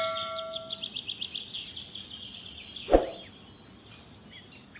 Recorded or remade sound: recorded